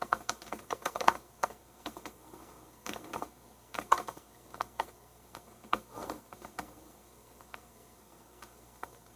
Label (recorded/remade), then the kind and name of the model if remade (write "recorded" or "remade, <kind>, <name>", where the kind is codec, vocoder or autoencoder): remade, codec, SNAC